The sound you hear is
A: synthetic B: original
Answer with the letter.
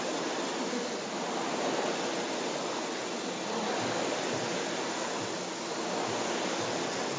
B